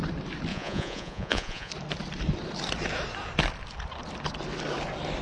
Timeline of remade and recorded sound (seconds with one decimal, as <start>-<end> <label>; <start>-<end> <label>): 0.0-0.5 recorded; 0.5-1.7 remade; 1.7-5.2 recorded